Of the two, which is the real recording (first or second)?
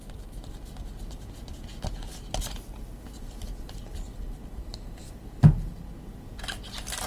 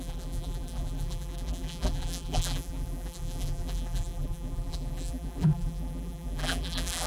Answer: first